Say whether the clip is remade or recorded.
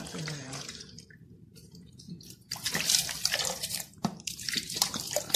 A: remade